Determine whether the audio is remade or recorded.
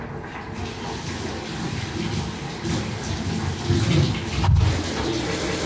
recorded